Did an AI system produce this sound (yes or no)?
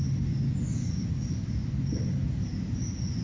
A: no